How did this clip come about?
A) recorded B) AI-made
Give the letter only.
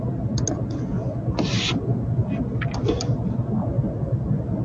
A